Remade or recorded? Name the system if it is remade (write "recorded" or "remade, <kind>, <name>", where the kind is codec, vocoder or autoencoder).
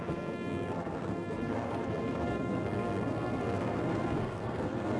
remade, codec, SNAC